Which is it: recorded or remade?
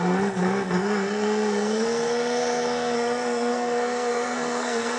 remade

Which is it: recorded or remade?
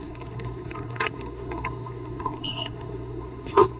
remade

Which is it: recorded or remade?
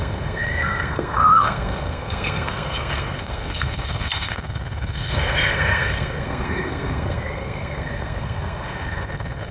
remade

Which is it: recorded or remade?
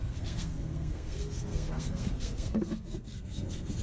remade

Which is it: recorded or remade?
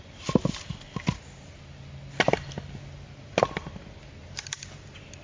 recorded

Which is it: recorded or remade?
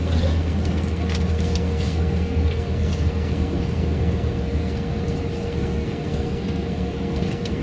remade